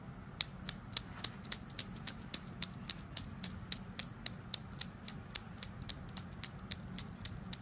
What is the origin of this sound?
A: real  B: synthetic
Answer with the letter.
A